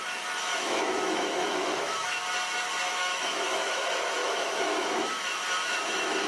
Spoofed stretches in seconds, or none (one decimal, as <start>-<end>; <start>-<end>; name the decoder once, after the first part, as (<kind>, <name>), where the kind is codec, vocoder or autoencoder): 0.0-2.2 (autoencoder, DAC-VAE); 2.9-6.3